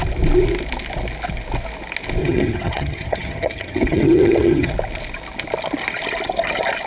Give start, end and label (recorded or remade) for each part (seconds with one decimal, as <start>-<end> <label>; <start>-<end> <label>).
0.0-2.2 recorded; 2.2-4.7 remade; 4.7-6.9 recorded